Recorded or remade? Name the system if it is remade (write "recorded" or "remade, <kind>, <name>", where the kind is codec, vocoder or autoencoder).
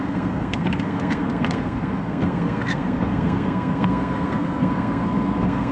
remade, codec, SNAC